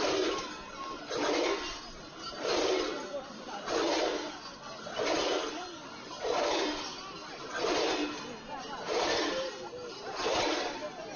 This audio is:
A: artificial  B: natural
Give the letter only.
B